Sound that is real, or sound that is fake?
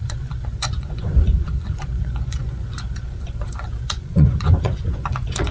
fake